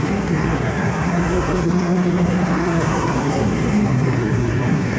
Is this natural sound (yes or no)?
no